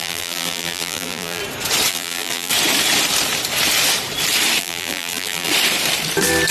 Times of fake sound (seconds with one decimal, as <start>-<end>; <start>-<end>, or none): 0.0-1.4; 1.9-2.5; 4.6-5.5